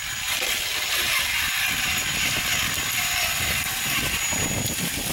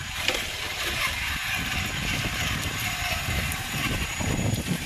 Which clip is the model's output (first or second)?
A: second